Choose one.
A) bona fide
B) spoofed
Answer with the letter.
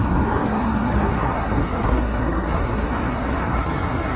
B